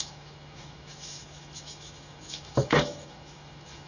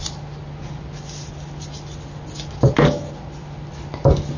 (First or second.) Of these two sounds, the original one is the second